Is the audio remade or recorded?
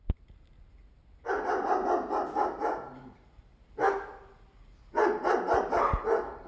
recorded